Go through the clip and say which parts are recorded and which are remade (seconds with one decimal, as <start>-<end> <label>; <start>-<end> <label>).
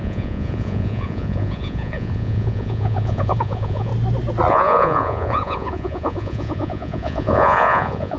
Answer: 0.0-3.9 remade; 3.9-4.5 recorded; 4.5-8.2 remade